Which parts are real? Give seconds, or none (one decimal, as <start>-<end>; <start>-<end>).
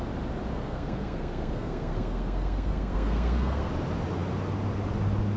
0.0-0.5; 3.7-5.4